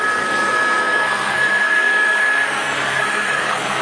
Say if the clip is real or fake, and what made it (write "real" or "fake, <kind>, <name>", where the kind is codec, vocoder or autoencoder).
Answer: fake, codec, SNAC